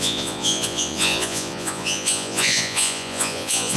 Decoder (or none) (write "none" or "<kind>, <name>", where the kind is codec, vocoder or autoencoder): vocoder, Vocos